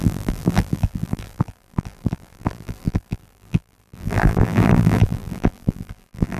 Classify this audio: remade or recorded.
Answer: remade